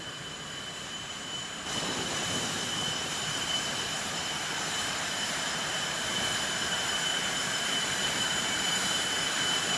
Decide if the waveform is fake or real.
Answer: fake